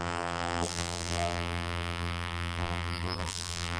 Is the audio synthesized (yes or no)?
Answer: yes